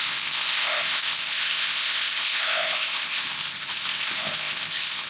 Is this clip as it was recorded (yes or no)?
no